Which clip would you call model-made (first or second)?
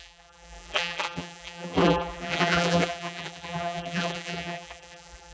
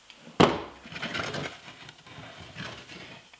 first